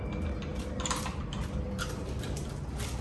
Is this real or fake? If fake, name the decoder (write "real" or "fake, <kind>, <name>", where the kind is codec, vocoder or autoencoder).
real